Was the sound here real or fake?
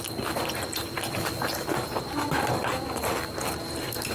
real